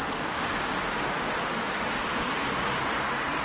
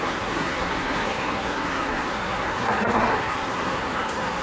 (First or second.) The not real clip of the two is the second